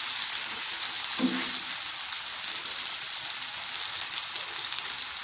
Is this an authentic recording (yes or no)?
yes